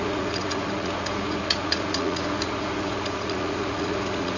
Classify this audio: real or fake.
fake